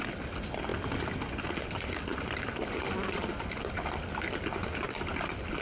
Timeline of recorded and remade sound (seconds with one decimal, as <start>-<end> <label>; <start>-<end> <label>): 0.0-5.6 recorded